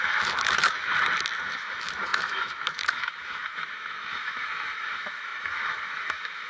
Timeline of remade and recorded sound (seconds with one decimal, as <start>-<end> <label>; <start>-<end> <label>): 0.0-0.9 remade; 0.9-1.4 recorded; 1.4-6.5 remade